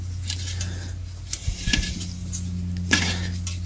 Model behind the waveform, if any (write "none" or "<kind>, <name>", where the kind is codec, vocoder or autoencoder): none